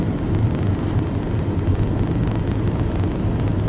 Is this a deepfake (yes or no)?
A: no